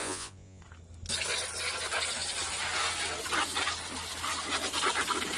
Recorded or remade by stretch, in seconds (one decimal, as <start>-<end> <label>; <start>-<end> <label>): 0.0-0.6 remade; 0.6-5.4 recorded